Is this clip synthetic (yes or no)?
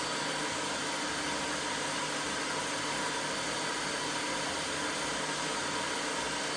no